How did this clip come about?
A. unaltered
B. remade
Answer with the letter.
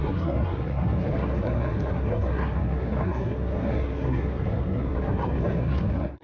B